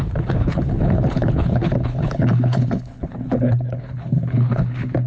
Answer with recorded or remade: remade